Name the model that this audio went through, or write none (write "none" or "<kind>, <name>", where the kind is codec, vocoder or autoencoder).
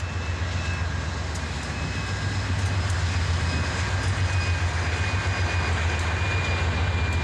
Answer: none